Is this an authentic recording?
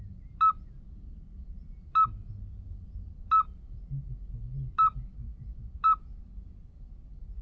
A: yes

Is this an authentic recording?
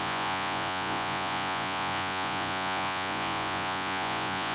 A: no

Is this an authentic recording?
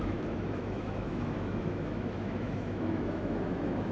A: no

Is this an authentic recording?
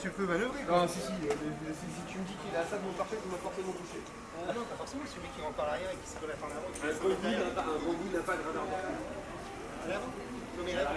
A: yes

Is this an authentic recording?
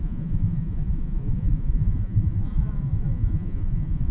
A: no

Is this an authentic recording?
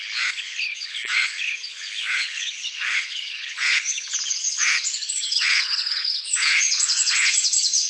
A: no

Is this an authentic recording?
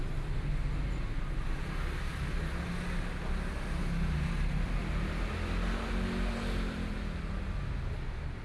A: yes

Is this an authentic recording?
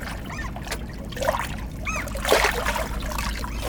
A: yes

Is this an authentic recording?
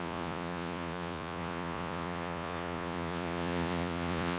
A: no